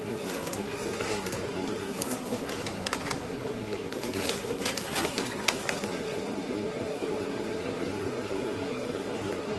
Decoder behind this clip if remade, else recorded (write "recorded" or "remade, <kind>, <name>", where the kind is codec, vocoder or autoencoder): remade, codec, SNAC